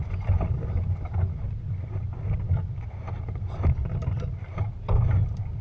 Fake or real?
real